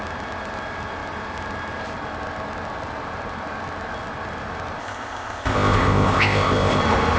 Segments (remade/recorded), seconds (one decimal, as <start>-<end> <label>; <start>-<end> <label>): 0.0-4.8 recorded; 4.8-6.8 remade; 6.8-7.2 recorded